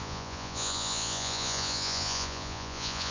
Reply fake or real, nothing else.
fake